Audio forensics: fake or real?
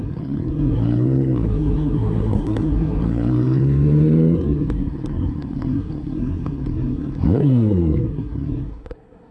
fake